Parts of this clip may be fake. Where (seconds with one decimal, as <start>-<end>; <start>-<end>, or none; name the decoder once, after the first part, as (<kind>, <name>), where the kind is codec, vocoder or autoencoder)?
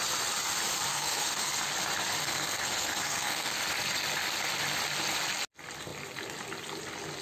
0.9-1.5 (codec, SNAC); 2.2-3.6